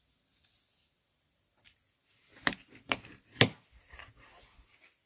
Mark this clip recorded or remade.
recorded